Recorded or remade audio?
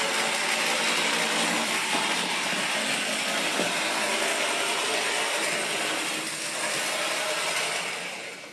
recorded